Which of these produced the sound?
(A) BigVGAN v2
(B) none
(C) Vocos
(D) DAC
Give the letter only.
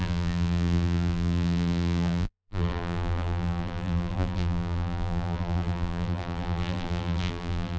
A